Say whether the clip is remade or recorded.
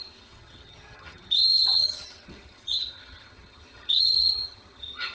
remade